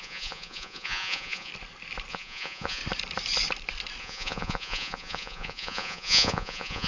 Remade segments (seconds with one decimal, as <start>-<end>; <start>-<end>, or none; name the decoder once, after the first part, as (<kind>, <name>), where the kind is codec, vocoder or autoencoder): 0.0-1.5 (vocoder, Vocos); 2.1-2.8; 4.0-6.9